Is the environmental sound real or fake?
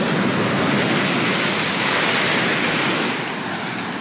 real